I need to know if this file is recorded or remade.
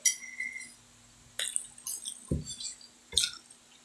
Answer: recorded